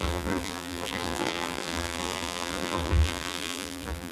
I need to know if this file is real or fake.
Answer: fake